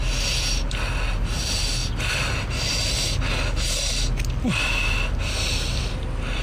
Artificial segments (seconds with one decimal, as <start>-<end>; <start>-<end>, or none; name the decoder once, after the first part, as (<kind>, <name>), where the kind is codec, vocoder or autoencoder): none